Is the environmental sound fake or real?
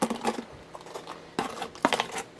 real